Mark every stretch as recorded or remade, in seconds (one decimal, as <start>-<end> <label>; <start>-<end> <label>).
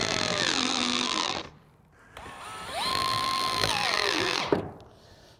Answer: 0.0-1.4 remade; 1.4-2.9 recorded; 2.9-4.4 remade; 4.4-5.4 recorded